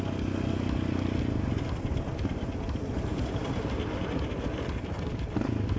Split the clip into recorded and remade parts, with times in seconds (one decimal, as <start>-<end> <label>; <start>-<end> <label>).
0.0-5.8 recorded